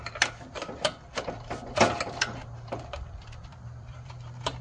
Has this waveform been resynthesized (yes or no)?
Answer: yes